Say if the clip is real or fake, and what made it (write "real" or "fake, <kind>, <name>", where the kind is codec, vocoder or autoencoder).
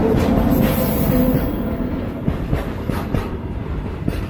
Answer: fake, vocoder, BigVGAN v2